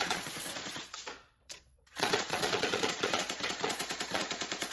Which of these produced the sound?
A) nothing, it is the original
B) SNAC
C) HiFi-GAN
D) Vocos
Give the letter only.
D